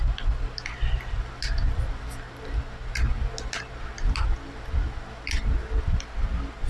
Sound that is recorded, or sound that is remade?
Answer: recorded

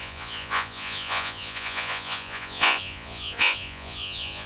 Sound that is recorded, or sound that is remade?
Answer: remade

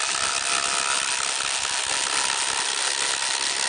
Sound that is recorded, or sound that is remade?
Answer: recorded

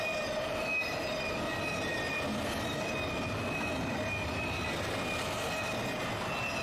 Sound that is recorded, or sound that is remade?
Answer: recorded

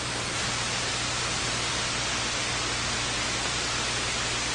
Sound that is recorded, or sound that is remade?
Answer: recorded